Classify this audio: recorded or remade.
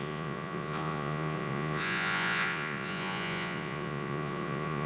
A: remade